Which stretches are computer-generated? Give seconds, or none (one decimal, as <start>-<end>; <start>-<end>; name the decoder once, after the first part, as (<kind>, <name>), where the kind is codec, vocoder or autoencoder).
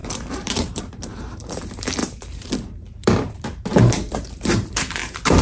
0.0-5.4 (vocoder, BigVGAN v2)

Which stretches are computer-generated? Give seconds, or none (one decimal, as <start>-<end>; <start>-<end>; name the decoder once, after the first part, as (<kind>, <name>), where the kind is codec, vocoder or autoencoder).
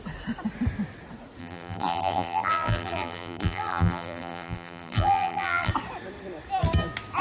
1.4-5.7 (vocoder, BigVGAN v2)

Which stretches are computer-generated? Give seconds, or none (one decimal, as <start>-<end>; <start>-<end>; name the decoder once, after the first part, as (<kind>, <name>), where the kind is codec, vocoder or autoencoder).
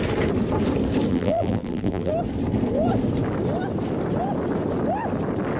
1.1-2.1 (vocoder, BigVGAN v2)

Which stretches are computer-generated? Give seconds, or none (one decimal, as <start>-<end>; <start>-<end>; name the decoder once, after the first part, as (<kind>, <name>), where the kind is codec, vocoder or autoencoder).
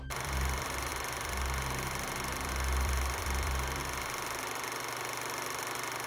0.0-3.8 (vocoder, BigVGAN v2)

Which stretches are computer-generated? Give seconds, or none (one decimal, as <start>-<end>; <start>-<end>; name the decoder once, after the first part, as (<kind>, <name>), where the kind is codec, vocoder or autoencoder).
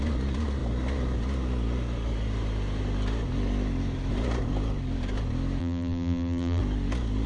5.6-6.6 (vocoder, BigVGAN v2)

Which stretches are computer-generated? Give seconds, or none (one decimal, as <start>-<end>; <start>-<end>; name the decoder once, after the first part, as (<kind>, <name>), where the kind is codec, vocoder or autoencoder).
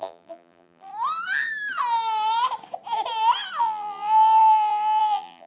0.0-0.9 (vocoder, BigVGAN v2); 3.6-5.5